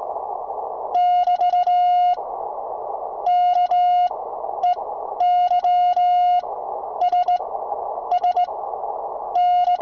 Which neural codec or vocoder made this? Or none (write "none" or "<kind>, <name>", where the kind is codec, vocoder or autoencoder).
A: none